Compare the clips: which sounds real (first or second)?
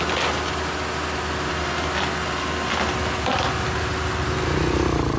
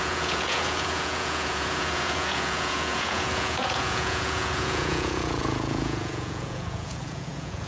first